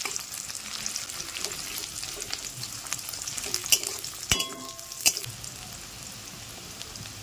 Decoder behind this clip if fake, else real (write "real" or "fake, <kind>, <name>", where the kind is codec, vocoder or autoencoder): real